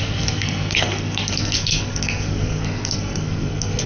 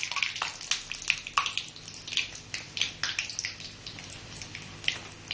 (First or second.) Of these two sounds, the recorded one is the second